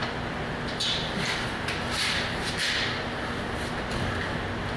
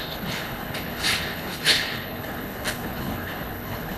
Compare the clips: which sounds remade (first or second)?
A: second